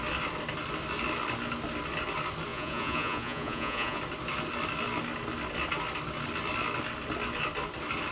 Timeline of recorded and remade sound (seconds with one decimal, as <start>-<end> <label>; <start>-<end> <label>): 0.0-2.5 recorded; 2.5-4.0 remade; 4.0-8.1 recorded